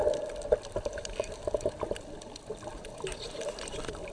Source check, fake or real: real